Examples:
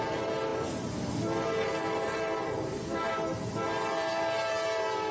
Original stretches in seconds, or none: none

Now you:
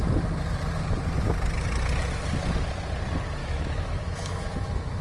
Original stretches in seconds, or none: 0.0-3.4